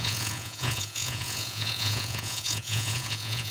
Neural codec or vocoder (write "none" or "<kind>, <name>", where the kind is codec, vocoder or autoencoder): vocoder, Vocos